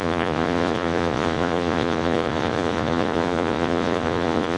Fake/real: fake